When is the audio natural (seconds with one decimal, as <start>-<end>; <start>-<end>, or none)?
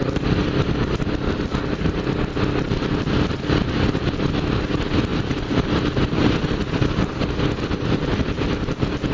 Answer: 0.0-9.1